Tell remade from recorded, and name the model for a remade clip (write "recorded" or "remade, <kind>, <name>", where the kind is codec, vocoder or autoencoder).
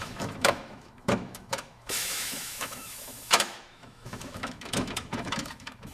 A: remade, autoencoder, DAC-VAE